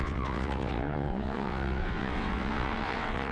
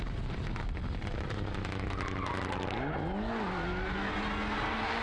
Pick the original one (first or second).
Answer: second